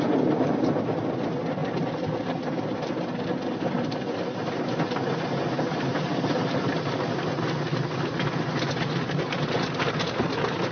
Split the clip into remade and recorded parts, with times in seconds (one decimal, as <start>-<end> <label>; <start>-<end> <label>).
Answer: 0.0-10.7 recorded